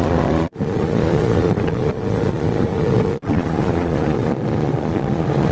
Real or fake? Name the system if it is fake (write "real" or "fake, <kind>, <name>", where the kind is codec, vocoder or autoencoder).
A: fake, vocoder, Vocos